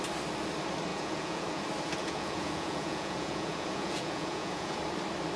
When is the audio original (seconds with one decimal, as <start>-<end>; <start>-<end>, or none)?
0.0-0.9; 1.6-2.0; 4.8-5.4

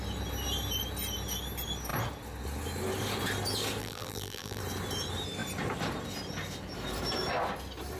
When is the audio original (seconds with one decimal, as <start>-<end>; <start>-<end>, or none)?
0.0-3.8; 4.6-8.0

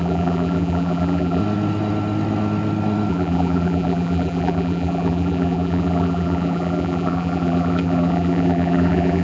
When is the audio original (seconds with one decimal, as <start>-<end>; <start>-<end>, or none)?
1.4-3.1

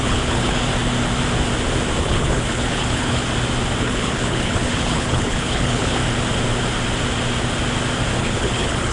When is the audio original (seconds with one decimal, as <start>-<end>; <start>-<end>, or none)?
0.7-2.0; 3.2-3.8; 6.0-8.2

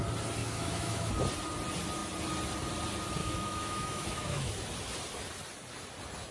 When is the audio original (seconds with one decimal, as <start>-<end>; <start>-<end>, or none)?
0.0-0.4; 1.1-3.2; 4.5-6.3

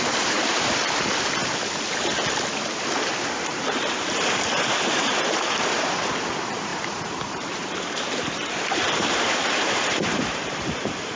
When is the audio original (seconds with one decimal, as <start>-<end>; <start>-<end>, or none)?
1.4-2.8

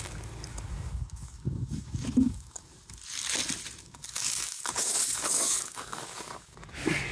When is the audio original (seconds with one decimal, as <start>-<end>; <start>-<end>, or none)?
2.7-3.8

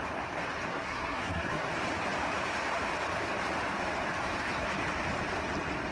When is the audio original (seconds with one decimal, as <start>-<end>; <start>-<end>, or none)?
0.0-0.7; 1.7-5.9